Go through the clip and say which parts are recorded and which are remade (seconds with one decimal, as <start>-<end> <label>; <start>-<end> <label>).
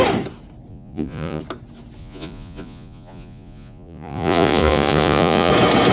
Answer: 0.0-0.7 recorded; 0.7-1.4 remade; 1.4-2.0 recorded; 2.0-5.5 remade; 5.5-5.9 recorded